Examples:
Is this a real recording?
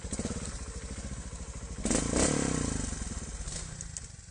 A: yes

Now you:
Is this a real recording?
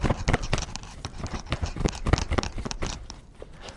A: no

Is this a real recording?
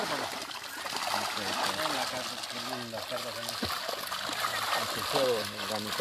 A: yes